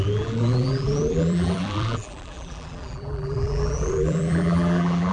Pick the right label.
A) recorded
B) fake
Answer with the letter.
B